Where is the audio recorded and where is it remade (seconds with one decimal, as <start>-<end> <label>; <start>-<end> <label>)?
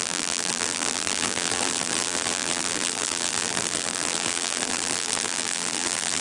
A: 0.0-6.2 remade